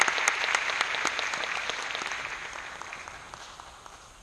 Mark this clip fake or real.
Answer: real